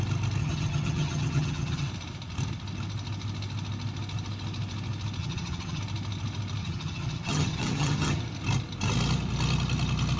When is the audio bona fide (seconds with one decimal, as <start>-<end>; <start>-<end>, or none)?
0.0-0.4; 1.9-5.2; 5.8-6.6; 8.2-10.2